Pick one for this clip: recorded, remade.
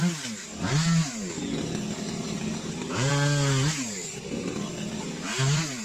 recorded